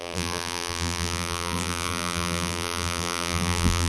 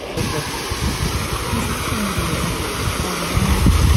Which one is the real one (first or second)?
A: second